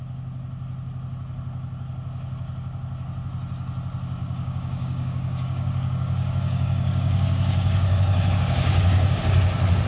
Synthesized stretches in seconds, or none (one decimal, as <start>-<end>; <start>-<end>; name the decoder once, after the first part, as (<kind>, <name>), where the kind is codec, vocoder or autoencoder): 4.2-9.2 (codec, DAC)